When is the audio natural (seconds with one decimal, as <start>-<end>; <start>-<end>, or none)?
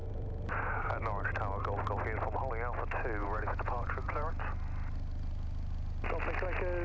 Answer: 0.0-3.2; 4.3-6.8